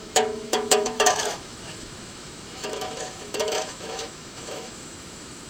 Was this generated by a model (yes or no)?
yes